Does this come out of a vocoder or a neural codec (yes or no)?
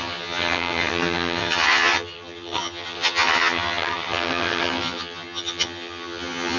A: yes